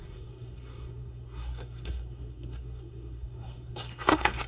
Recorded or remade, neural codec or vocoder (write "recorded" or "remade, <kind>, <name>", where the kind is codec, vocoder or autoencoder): remade, codec, SNAC